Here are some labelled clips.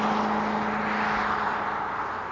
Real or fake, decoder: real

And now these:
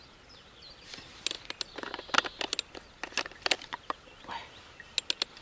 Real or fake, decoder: real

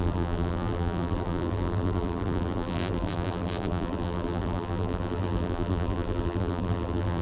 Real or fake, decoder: fake, vocoder, BigVGAN v2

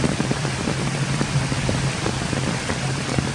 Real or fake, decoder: real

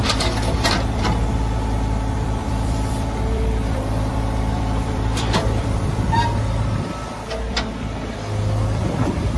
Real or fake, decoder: fake, vocoder, BigVGAN v2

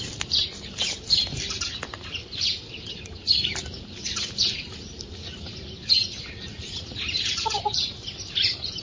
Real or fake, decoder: fake, vocoder, BigVGAN v2